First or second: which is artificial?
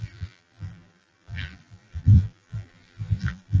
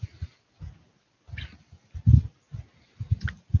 first